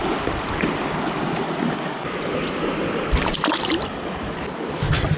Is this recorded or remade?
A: recorded